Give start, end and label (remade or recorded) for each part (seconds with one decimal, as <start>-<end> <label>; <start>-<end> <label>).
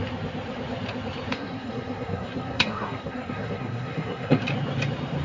0.0-1.3 recorded; 1.3-4.4 remade; 4.4-5.2 recorded